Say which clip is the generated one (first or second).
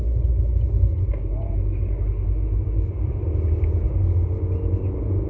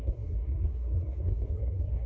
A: second